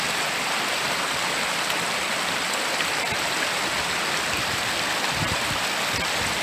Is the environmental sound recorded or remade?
recorded